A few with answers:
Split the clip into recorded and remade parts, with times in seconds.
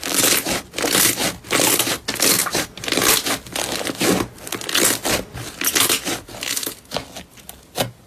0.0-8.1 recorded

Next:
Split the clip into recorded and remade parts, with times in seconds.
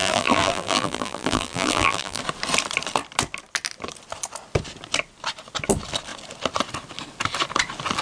0.0-2.2 remade; 2.2-8.0 recorded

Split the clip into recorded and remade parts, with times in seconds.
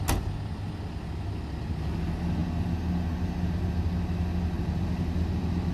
0.0-5.7 recorded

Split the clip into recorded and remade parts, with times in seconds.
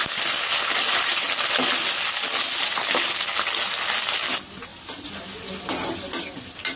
0.0-6.8 recorded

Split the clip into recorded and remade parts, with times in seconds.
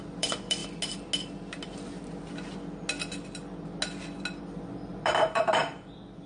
0.0-0.6 remade; 0.6-4.4 recorded; 4.4-6.3 remade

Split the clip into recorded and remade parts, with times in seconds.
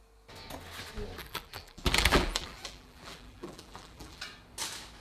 0.0-1.2 recorded; 1.2-4.2 remade; 4.2-5.0 recorded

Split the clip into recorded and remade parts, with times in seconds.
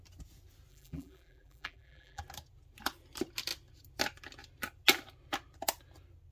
0.0-0.7 recorded; 0.7-2.2 remade; 2.2-6.3 recorded